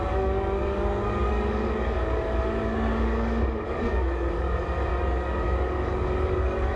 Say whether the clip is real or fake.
fake